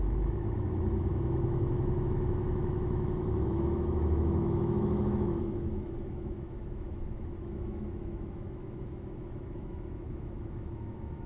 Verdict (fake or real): fake